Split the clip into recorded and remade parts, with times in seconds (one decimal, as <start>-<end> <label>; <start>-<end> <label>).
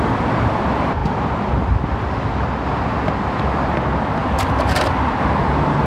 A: 0.0-5.9 remade